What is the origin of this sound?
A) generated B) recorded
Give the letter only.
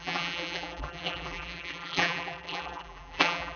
A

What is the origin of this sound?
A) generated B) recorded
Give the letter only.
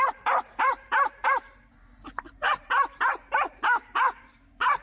A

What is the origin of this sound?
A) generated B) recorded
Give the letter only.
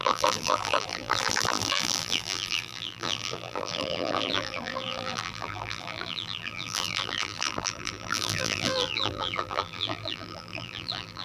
A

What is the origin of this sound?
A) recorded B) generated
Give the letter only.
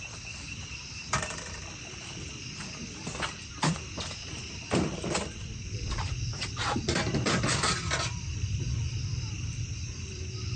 B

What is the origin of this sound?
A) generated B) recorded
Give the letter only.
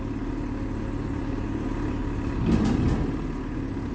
B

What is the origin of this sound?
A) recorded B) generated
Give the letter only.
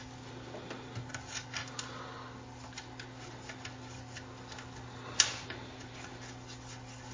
A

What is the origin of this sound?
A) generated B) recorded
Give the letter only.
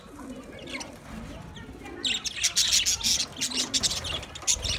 B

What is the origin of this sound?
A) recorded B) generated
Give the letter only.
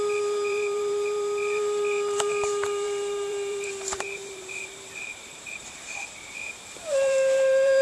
B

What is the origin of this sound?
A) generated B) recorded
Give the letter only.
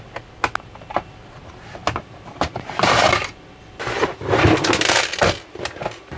B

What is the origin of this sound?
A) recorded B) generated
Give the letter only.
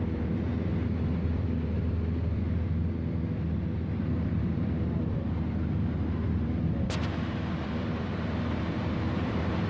B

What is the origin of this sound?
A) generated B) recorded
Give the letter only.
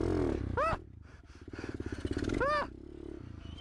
B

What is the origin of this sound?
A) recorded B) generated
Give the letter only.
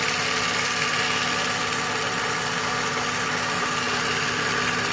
A